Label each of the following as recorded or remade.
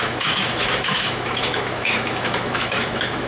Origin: remade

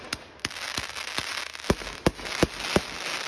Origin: recorded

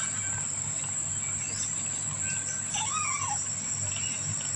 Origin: recorded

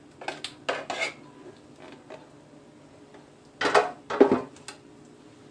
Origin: recorded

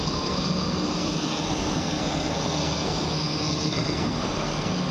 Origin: remade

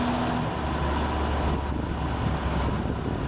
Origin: recorded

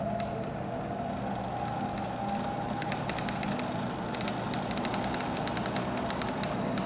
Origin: recorded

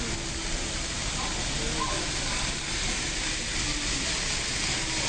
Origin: recorded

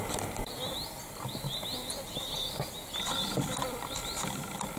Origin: recorded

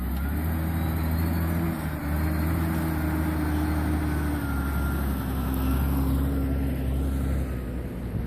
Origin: recorded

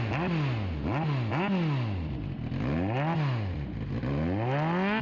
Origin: recorded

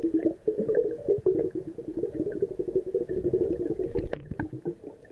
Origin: remade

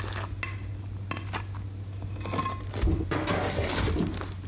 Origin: recorded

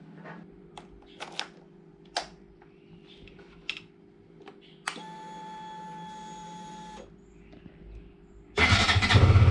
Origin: recorded